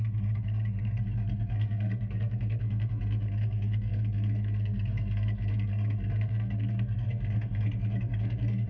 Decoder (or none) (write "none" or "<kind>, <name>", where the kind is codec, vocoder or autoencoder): codec, SNAC